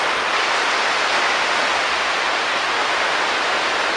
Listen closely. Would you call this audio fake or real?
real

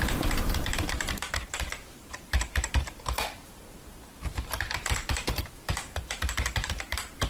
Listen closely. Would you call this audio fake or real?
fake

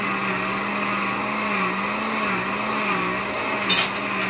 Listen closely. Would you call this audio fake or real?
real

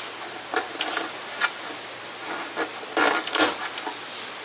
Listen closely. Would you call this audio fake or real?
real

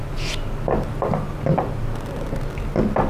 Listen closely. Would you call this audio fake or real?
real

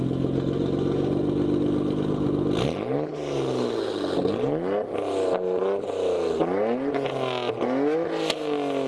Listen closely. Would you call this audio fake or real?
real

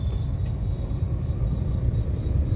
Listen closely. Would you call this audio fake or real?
fake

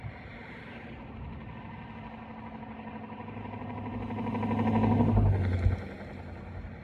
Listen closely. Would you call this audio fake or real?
real